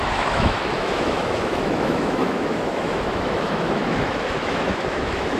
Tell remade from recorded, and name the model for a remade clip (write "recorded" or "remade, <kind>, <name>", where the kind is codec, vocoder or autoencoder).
remade, autoencoder, DAC-VAE